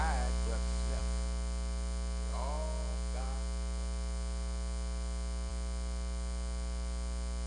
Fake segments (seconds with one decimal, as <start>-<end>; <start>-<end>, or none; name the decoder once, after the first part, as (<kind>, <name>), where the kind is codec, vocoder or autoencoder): none